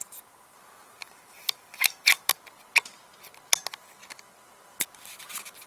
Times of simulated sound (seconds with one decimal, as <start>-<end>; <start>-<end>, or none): 0.5-2.3